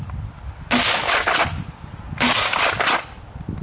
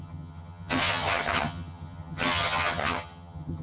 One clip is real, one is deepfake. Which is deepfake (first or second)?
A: second